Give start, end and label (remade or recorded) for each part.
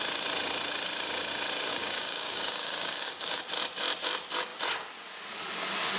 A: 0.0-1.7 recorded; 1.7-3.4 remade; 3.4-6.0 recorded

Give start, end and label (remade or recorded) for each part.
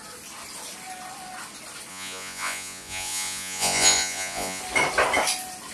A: 0.0-1.9 recorded; 1.9-4.6 remade; 4.6-5.7 recorded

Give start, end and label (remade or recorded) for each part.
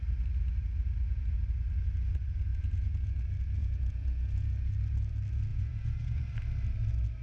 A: 0.0-2.5 recorded; 2.5-3.2 remade; 3.2-3.6 recorded; 3.6-4.5 remade; 4.5-5.5 recorded; 5.5-6.2 remade; 6.2-7.2 recorded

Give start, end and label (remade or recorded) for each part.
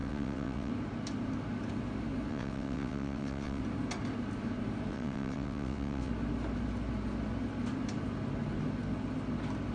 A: 0.0-0.7 remade; 0.7-2.3 recorded; 2.3-3.6 remade; 3.6-4.9 recorded; 4.9-6.1 remade; 6.1-9.7 recorded